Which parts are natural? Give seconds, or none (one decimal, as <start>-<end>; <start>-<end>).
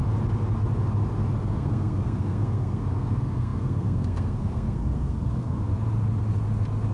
0.0-1.4; 5.7-6.9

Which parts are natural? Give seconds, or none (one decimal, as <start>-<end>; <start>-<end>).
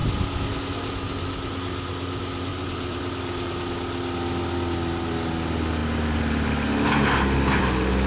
0.0-2.5; 3.6-8.1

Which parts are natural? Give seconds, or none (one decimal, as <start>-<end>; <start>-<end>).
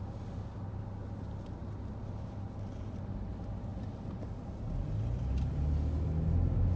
0.0-6.8